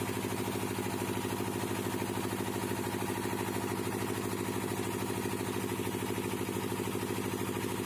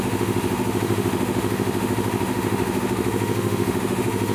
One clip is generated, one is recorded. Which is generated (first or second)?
second